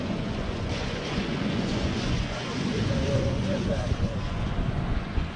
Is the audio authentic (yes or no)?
no